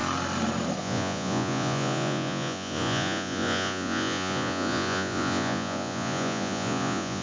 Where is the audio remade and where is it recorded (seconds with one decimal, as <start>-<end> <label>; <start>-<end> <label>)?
0.0-0.8 recorded; 0.8-7.2 remade